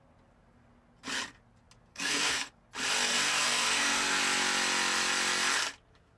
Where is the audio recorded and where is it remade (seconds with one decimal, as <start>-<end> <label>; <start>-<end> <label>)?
0.0-1.9 recorded; 1.9-2.5 remade; 2.5-3.1 recorded; 3.1-4.2 remade; 4.2-6.2 recorded